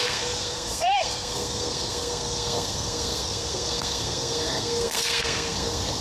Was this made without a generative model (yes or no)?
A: no